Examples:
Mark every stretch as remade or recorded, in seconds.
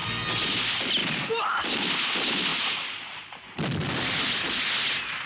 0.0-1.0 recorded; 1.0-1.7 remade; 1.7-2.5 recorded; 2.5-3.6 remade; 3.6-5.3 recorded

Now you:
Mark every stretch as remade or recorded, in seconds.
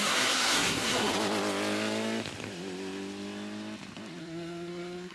0.0-1.1 remade; 1.1-4.2 recorded; 4.2-5.1 remade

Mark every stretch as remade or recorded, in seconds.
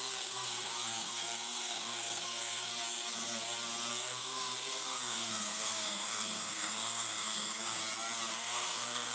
0.0-2.7 remade; 2.7-3.9 recorded; 3.9-7.8 remade; 7.8-8.3 recorded; 8.3-9.1 remade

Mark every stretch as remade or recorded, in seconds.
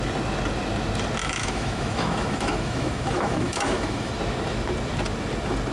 0.0-1.2 recorded; 1.2-4.1 remade; 4.1-5.7 recorded